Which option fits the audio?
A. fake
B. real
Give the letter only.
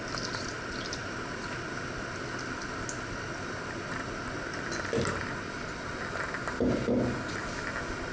B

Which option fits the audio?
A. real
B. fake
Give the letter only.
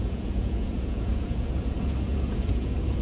B